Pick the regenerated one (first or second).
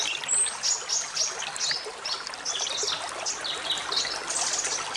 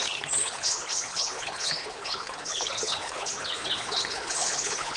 second